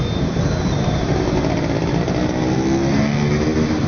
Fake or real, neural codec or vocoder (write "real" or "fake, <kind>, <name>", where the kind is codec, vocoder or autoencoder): real